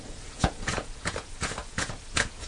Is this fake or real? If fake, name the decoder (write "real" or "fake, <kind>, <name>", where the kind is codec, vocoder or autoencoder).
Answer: fake, vocoder, Vocos